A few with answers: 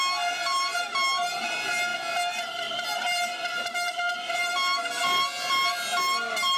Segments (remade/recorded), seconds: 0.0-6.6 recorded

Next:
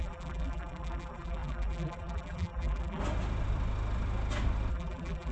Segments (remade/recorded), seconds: 0.0-3.0 remade; 3.0-4.7 recorded; 4.7-5.3 remade

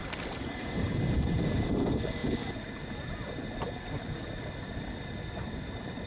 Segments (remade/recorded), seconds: 0.0-2.2 remade; 2.2-2.8 recorded; 2.8-6.1 remade

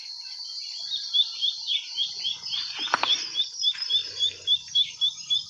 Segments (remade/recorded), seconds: 0.0-5.5 recorded